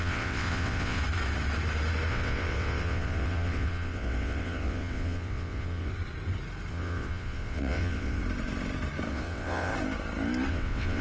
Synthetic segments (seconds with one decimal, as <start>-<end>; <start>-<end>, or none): 0.0-1.0; 2.1-5.9; 6.7-8.2; 9.1-9.7; 10.5-11.0

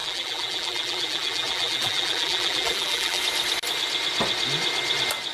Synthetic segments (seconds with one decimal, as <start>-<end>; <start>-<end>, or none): 0.0-3.2

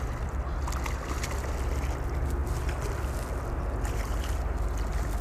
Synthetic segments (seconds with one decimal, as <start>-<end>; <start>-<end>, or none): none